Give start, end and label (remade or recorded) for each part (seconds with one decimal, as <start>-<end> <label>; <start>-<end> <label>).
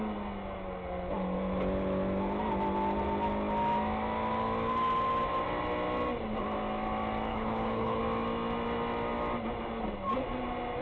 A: 0.0-7.3 recorded; 7.3-8.0 remade; 8.0-10.8 recorded